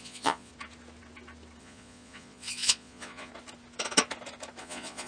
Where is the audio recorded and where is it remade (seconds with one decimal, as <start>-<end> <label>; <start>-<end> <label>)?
0.0-0.5 remade; 0.5-1.6 recorded; 1.6-3.3 remade; 3.3-4.6 recorded; 4.6-5.1 remade

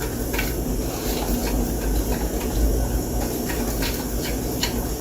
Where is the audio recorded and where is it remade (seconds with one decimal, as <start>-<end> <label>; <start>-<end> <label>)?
0.0-5.0 recorded

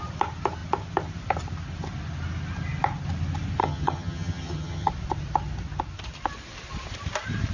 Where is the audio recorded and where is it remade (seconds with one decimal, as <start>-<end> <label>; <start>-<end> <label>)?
0.0-3.6 recorded; 3.6-4.9 remade; 4.9-7.5 recorded

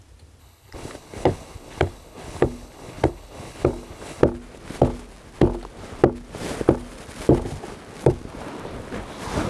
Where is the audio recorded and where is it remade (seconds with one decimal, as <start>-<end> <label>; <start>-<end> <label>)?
0.0-0.4 recorded; 0.4-4.2 remade; 4.2-9.5 recorded

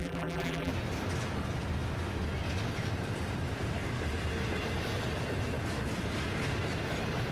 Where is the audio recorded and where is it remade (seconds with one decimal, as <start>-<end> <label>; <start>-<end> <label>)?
0.0-0.7 remade; 0.7-7.3 recorded